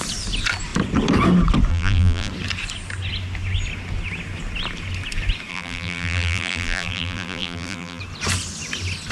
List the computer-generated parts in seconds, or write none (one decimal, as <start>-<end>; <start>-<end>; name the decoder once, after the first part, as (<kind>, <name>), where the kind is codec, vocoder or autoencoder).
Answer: 1.7-2.3 (vocoder, BigVGAN v2); 5.5-8.0